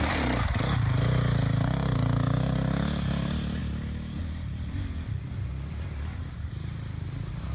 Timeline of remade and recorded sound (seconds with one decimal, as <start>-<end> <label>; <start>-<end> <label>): 0.0-7.5 recorded